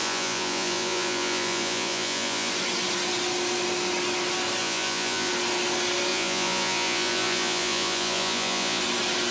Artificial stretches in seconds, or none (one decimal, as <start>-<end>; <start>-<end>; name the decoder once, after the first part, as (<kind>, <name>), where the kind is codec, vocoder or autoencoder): 0.0-2.5 (vocoder, Vocos); 4.6-5.3; 6.1-8.8